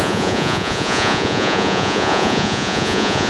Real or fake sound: fake